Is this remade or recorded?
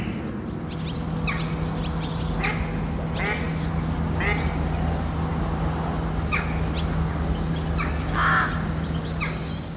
recorded